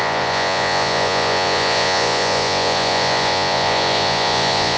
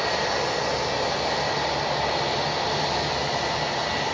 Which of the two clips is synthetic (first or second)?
first